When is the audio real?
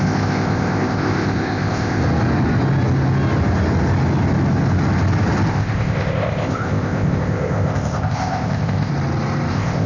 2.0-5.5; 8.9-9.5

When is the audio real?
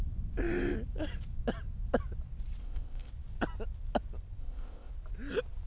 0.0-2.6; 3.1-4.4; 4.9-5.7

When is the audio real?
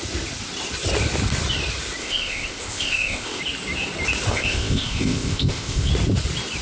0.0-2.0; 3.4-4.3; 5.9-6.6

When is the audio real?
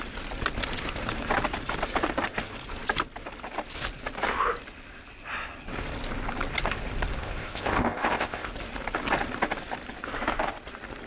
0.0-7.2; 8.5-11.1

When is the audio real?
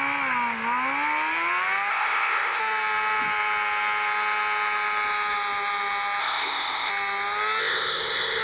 0.0-1.9; 2.6-6.2; 6.9-7.6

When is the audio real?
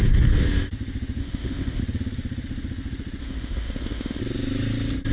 0.0-1.2; 1.8-3.2; 4.2-5.1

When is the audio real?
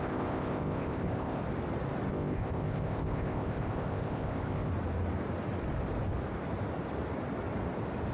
1.4-2.1; 4.7-8.1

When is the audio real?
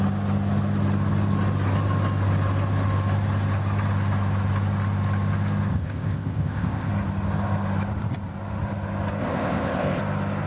0.0-5.7; 6.9-9.2; 10.0-10.5